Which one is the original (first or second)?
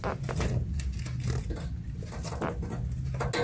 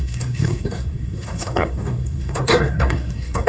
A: first